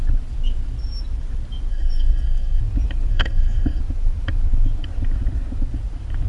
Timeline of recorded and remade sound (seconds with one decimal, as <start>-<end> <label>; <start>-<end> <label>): 0.0-1.7 recorded; 1.7-2.6 remade; 2.6-3.1 recorded; 3.1-3.8 remade; 3.8-6.3 recorded